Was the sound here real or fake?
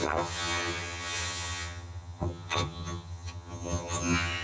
fake